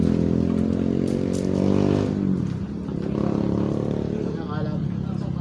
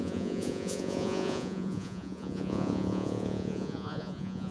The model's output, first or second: second